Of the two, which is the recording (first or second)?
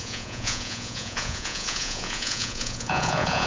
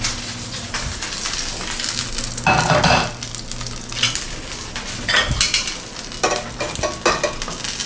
second